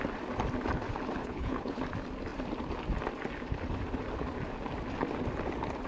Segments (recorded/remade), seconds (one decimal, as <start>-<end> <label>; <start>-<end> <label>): 0.0-1.2 recorded; 1.2-1.8 remade; 1.8-5.9 recorded